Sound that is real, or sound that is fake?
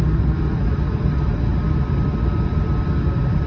real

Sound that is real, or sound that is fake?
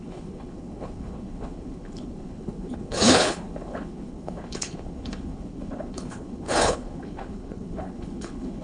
fake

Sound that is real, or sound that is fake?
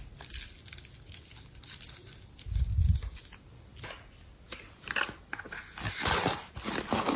real